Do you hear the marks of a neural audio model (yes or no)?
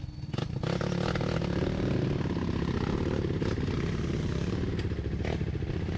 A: no